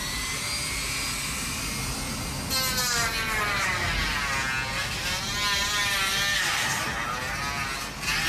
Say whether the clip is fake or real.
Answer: real